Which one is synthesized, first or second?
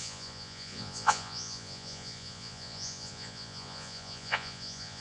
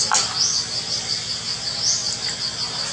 first